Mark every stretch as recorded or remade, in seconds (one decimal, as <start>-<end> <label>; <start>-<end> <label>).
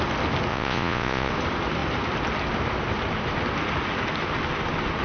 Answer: 0.0-0.5 recorded; 0.5-1.3 remade; 1.3-5.0 recorded